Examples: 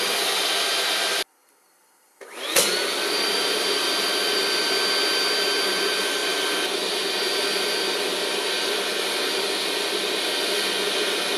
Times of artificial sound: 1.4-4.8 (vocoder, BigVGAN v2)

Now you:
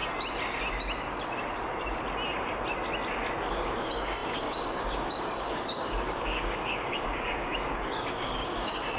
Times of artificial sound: 3.5-9.0 (codec, DAC)

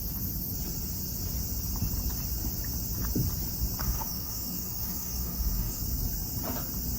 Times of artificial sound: 3.8-5.8 (codec, DAC)

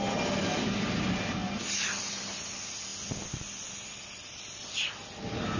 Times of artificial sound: none